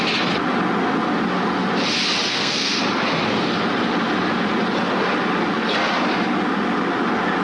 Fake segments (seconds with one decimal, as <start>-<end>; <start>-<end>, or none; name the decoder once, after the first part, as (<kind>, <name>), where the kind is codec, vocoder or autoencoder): 2.3-2.8 (codec, SNAC)